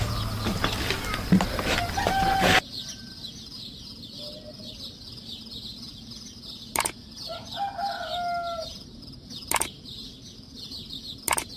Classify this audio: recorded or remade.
recorded